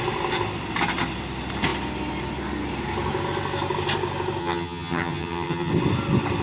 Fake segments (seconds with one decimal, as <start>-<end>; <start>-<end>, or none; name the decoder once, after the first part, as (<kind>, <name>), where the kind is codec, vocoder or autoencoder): 4.4-5.7 (vocoder, HiFi-GAN)

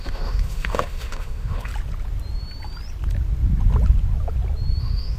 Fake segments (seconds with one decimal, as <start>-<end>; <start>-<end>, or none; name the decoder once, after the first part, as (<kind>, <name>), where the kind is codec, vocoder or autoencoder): 0.0-1.7 (autoencoder, DAC-VAE); 4.8-5.2

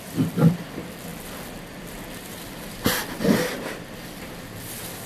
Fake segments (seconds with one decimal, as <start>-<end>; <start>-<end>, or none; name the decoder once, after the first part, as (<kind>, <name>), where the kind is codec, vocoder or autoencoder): none

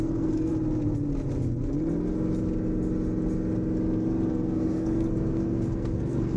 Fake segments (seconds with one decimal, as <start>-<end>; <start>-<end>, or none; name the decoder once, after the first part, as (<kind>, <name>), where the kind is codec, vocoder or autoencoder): 0.0-0.5 (codec, SNAC); 4.3-6.4

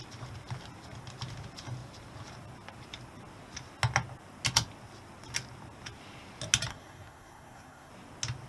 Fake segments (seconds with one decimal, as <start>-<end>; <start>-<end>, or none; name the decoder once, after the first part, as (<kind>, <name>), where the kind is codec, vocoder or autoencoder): 6.7-7.9 (codec, SNAC)

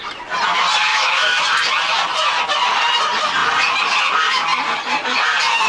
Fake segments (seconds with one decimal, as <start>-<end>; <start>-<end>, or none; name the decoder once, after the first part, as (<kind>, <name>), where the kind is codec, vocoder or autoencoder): 0.9-1.4 (autoencoder, DAC-VAE)

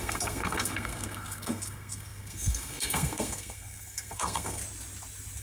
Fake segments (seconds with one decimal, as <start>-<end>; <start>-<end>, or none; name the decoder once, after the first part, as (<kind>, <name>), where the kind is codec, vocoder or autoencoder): 0.0-4.6 (codec, SNAC)

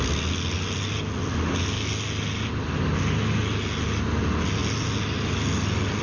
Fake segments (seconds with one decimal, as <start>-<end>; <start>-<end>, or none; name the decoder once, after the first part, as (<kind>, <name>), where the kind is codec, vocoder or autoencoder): none